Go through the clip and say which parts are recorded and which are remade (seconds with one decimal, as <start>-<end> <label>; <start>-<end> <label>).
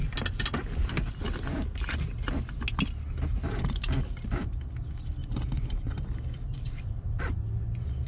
0.0-5.2 recorded; 5.2-7.2 remade; 7.2-8.1 recorded